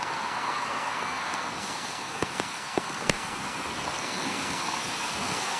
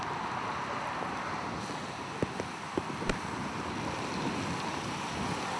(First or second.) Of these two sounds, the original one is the second